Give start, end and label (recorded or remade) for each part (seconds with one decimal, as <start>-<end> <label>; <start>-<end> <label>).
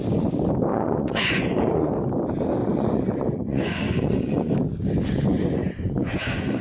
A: 0.0-0.7 recorded; 0.7-1.9 remade; 1.9-2.6 recorded; 2.6-4.5 remade; 4.5-5.3 recorded; 5.3-6.6 remade